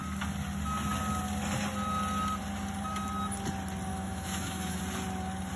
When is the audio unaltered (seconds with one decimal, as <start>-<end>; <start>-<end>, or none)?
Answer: 0.0-3.9; 4.8-5.6